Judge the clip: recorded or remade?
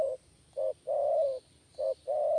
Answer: recorded